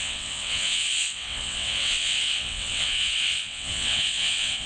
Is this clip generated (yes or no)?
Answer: yes